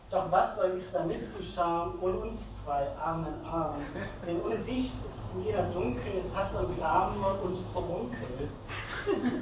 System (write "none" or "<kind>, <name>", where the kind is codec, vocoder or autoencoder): codec, DAC